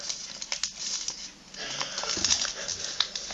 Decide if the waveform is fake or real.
real